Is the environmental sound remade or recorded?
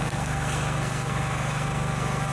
remade